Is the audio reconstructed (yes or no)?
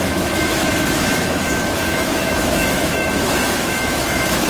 yes